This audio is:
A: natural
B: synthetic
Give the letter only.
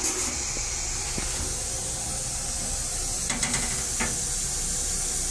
A